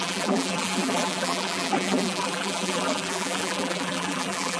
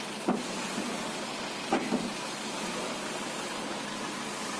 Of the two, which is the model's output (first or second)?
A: first